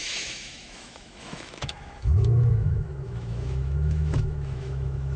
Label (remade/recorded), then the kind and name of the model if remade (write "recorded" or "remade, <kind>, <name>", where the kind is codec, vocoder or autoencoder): remade, autoencoder, DAC-VAE